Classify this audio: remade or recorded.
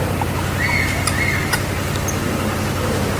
recorded